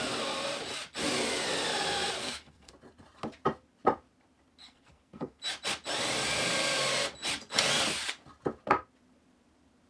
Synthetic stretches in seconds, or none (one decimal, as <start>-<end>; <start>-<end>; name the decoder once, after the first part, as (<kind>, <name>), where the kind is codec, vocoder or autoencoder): 2.2-2.7 (codec, SNAC); 4.6-5.4

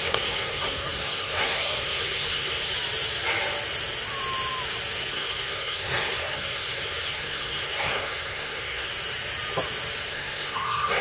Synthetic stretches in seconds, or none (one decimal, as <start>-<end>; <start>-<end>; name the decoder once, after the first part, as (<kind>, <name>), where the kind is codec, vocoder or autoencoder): 0.0-2.6 (codec, SNAC); 5.1-8.9; 10.1-11.0